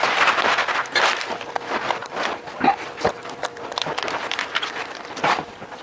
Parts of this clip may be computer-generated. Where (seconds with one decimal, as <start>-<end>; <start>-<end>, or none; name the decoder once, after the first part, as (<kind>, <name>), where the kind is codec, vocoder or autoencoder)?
0.0-2.0 (vocoder, BigVGAN v2); 2.9-5.8